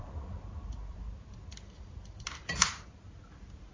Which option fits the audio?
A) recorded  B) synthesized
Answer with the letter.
A